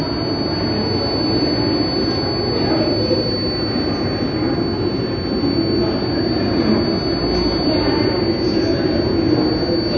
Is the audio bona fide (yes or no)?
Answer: yes